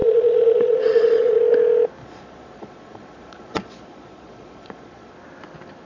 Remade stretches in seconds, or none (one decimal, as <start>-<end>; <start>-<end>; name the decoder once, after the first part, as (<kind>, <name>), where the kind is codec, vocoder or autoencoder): 0.0-1.4 (vocoder, Vocos); 2.0-5.1